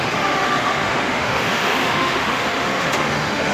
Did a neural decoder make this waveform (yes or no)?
yes